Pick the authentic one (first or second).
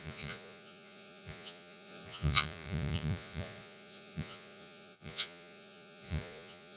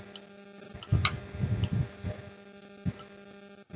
second